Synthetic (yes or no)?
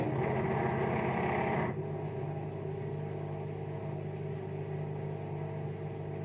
no